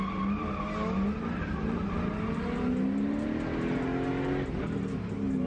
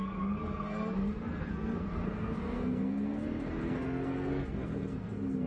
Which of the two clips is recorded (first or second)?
first